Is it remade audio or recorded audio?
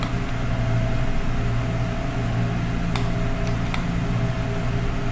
recorded